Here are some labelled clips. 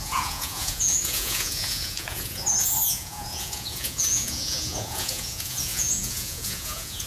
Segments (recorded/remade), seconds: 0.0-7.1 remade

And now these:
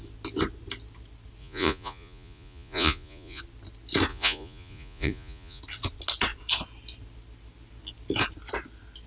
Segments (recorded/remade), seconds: 0.0-1.4 recorded; 1.4-3.4 remade; 3.4-4.1 recorded; 4.1-5.6 remade; 5.6-9.1 recorded